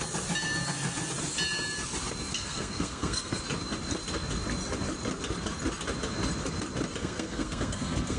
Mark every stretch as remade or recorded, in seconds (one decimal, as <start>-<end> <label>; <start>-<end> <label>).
0.0-2.3 recorded; 2.3-3.4 remade; 3.4-7.0 recorded; 7.0-8.2 remade